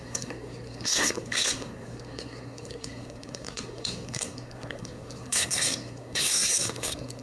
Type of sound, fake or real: fake